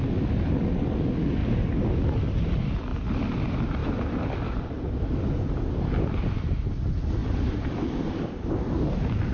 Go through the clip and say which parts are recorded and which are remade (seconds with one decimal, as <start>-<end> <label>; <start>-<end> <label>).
0.0-1.4 recorded; 1.4-1.9 remade; 1.9-7.2 recorded; 7.2-8.9 remade; 8.9-9.3 recorded